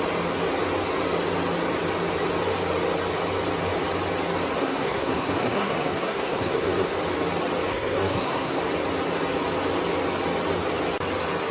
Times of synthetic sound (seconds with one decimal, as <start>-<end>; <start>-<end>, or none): 4.6-6.9; 7.7-8.6